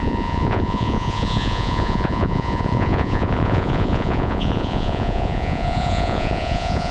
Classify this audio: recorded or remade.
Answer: remade